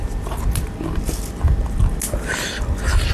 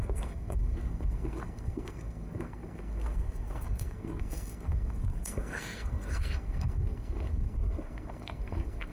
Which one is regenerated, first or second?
second